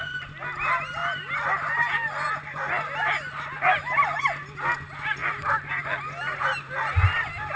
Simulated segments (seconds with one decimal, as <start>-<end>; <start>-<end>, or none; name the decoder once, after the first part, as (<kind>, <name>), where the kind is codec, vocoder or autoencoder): none